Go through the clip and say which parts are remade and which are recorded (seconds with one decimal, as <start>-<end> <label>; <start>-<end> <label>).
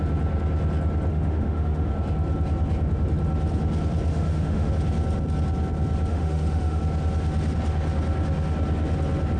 0.0-1.1 recorded; 1.1-1.9 remade; 1.9-4.1 recorded; 4.1-4.7 remade; 4.7-6.1 recorded; 6.1-6.8 remade; 6.8-9.4 recorded